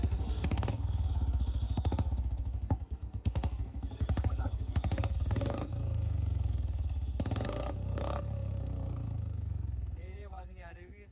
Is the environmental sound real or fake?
fake